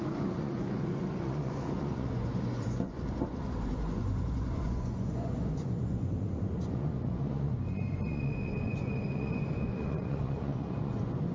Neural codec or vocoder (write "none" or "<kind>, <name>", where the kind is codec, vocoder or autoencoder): vocoder, Vocos